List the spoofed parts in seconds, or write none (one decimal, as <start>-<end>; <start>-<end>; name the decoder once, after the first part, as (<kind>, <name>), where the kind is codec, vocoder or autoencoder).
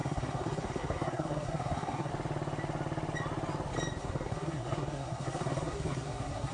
0.0-2.1 (codec, SNAC); 4.0-6.5